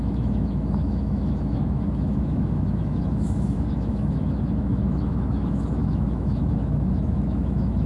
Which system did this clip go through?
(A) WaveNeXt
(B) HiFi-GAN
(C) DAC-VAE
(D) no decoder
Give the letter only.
C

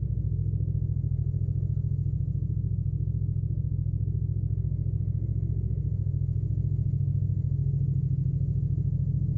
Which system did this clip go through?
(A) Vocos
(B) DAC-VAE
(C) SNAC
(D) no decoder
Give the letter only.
B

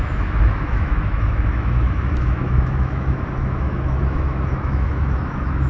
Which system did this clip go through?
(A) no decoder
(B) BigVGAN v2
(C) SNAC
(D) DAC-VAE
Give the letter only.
D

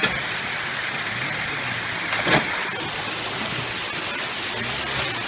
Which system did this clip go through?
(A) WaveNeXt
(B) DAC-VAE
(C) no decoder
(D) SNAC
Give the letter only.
C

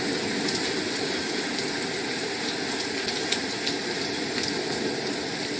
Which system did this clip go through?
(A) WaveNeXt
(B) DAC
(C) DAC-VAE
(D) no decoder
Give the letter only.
D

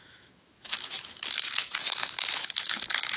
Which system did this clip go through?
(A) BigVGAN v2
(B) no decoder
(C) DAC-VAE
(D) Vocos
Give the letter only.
C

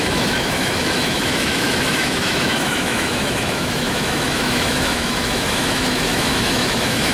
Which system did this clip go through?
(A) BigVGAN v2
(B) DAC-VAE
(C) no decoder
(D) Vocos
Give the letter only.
B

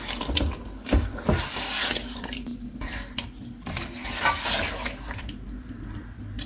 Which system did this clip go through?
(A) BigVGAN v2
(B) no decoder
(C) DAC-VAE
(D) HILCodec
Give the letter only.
B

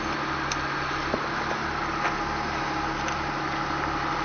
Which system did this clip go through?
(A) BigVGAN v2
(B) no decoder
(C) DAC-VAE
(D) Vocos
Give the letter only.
B